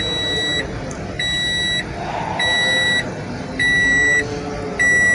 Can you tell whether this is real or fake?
real